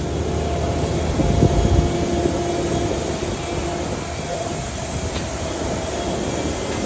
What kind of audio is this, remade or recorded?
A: recorded